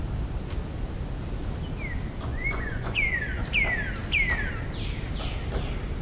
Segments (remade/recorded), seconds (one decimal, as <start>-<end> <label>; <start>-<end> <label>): 0.0-2.3 recorded; 2.3-3.4 remade; 3.4-6.0 recorded